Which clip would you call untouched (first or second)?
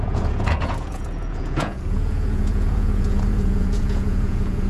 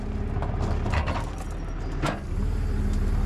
second